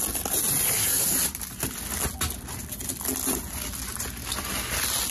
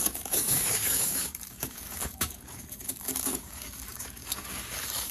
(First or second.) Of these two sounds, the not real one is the second